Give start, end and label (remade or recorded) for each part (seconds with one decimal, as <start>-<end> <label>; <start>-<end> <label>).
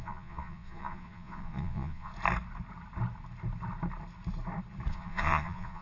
0.0-2.1 remade; 2.1-4.9 recorded; 4.9-5.8 remade